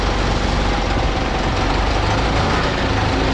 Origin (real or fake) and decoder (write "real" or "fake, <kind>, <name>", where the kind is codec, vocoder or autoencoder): real